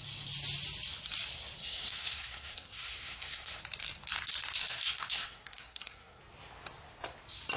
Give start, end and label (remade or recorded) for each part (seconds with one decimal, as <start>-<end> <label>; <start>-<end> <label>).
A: 0.0-1.6 recorded; 1.6-3.6 remade; 3.6-4.6 recorded; 4.6-6.2 remade; 6.2-7.6 recorded